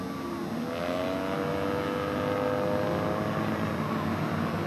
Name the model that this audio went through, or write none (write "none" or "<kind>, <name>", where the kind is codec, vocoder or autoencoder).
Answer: none